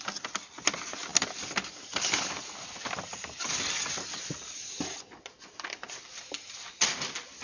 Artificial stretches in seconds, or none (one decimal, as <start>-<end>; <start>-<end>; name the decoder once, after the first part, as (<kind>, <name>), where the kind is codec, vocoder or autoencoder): none